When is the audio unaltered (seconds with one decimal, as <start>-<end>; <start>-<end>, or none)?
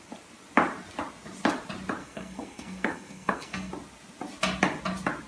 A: 0.0-2.0; 3.7-5.3